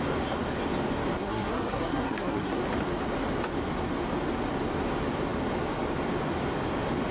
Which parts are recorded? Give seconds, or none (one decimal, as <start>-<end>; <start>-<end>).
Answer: 0.0-1.2; 2.6-7.1